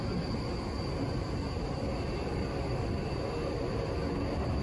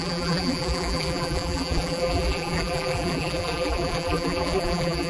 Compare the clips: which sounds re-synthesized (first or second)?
second